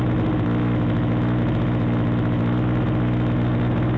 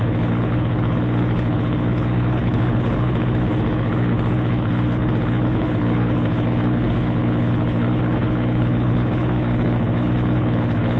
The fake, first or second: second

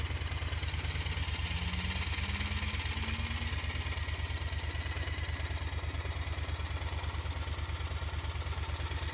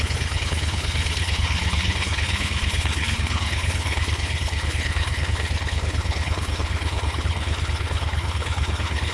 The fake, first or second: second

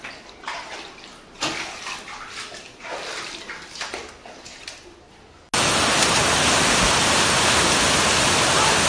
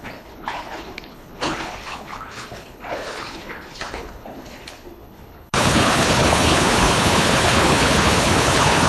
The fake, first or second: second